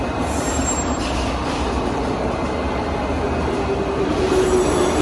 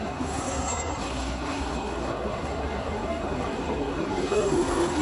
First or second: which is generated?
second